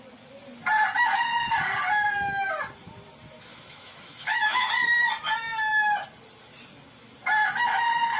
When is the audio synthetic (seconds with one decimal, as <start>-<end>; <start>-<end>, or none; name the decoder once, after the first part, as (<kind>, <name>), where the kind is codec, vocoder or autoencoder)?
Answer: 3.5-4.7 (autoencoder, DAC-VAE)